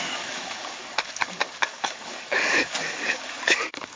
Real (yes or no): no